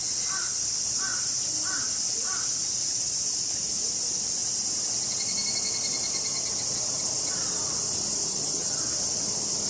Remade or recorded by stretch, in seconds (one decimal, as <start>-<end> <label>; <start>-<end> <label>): 0.0-8.3 recorded; 8.3-8.8 remade; 8.8-9.7 recorded